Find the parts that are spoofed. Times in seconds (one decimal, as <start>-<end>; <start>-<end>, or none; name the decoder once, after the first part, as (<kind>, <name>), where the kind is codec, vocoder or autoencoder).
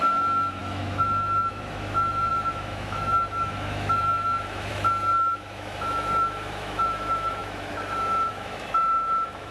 0.0-9.5 (autoencoder, DAC-VAE)